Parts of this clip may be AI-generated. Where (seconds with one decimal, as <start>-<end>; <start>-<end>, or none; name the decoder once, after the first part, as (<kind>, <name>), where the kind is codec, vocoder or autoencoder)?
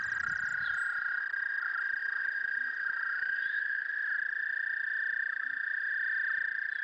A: 0.5-1.2 (vocoder, BigVGAN v2); 2.0-3.9; 5.2-5.9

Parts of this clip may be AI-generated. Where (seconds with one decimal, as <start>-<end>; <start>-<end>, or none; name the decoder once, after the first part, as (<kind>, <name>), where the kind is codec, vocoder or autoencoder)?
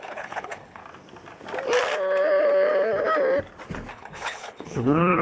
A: 0.0-0.8 (codec, HILCodec); 3.9-5.2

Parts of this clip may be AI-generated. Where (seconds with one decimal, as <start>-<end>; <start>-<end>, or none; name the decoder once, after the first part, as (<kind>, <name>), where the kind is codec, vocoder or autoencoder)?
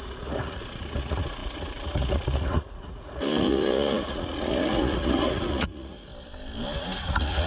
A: 0.0-6.1 (vocoder, Vocos); 6.8-7.5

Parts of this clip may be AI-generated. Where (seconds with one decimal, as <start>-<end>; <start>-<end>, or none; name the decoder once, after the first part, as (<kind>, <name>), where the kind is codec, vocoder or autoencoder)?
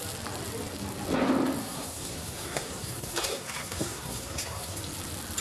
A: 1.6-4.8 (codec, SNAC)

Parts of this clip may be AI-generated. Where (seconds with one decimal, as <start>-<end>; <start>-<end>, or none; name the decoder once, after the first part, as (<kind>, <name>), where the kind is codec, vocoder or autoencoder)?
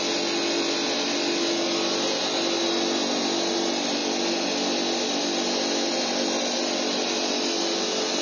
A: none